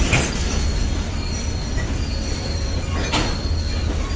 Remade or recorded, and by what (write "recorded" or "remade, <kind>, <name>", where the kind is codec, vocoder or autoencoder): recorded